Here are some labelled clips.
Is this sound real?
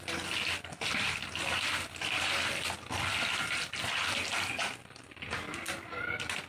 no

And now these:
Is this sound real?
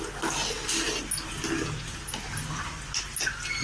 yes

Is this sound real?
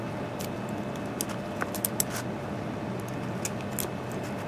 yes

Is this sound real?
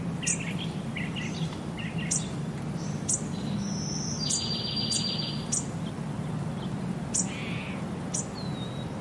yes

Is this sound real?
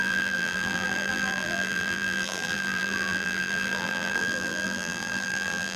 no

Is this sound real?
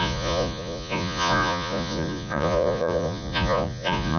no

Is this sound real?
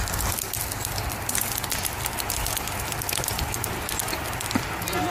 yes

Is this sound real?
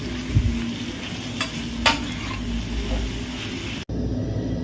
yes